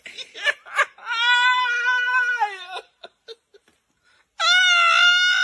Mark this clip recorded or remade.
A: recorded